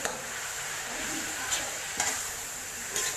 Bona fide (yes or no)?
no